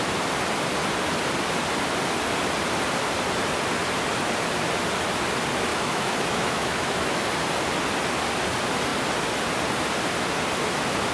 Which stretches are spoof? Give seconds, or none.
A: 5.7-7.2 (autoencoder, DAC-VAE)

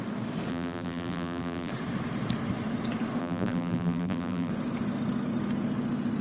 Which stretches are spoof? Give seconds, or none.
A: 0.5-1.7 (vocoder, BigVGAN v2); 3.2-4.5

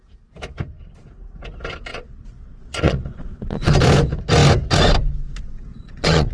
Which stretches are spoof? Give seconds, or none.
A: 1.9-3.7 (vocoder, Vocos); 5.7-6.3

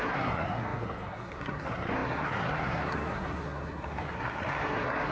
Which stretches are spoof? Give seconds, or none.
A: 0.0-5.1 (codec, SNAC)

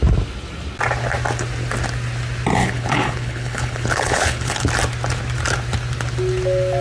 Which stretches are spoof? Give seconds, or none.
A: 2.6-4.7 (codec, HILCodec)

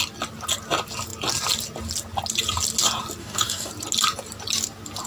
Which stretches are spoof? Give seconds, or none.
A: 3.2-3.7 (codec, DAC)